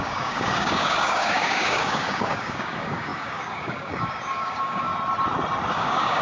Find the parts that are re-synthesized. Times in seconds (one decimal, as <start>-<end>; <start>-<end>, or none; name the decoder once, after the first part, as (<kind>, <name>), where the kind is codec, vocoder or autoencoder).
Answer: 0.0-4.9 (codec, DAC); 5.7-6.2